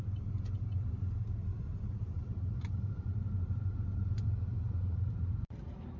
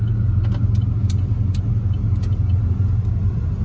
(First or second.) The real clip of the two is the second